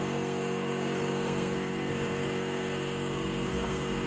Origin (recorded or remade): remade